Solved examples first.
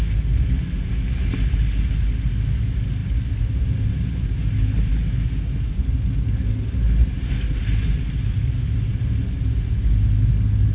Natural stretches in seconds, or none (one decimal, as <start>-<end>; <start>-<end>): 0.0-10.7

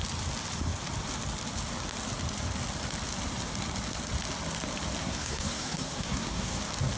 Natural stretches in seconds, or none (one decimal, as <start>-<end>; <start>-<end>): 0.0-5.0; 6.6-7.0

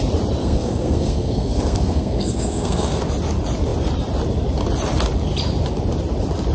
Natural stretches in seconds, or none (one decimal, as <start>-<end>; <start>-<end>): 0.0-0.4; 3.0-6.5

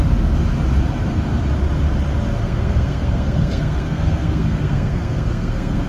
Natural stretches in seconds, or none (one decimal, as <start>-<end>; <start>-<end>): 0.0-2.4

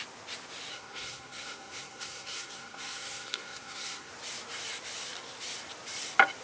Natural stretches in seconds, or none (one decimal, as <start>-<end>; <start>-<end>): 0.0-0.7; 4.1-6.4

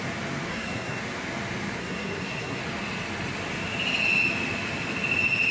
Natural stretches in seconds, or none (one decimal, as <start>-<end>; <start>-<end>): 0.0-0.5; 1.0-1.8; 2.6-5.5